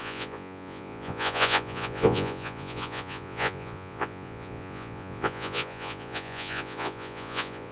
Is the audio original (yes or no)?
no